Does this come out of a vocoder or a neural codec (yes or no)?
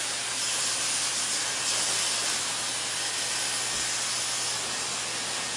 no